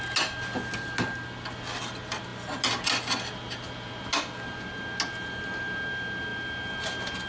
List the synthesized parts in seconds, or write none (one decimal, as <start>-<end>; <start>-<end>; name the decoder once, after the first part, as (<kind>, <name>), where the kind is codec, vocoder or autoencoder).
none